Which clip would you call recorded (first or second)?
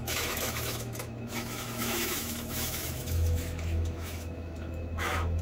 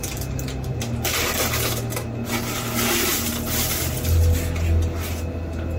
second